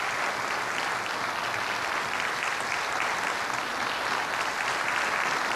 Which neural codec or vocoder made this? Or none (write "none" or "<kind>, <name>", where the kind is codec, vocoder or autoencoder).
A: none